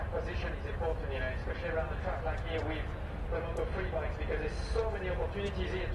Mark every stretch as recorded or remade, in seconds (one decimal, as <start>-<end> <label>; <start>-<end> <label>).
0.0-5.9 recorded